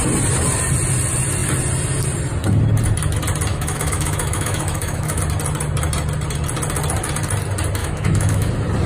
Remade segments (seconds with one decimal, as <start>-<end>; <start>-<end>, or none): 3.5-5.2; 7.8-8.5